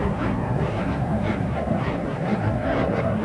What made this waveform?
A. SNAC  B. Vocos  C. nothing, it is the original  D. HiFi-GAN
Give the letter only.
A